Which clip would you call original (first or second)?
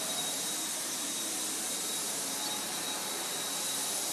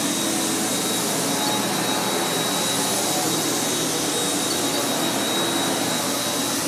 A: second